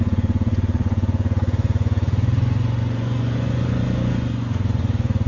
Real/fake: fake